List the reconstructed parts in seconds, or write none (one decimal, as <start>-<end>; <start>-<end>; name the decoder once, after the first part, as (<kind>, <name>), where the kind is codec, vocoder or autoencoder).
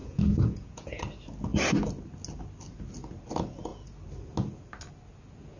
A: 0.0-1.0 (vocoder, Vocos)